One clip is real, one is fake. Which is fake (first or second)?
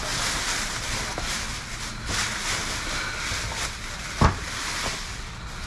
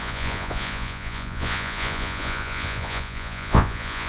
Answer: second